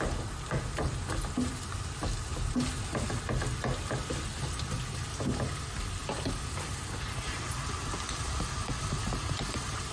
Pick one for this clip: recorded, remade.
recorded